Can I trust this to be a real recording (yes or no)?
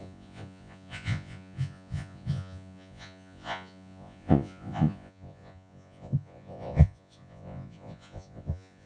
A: no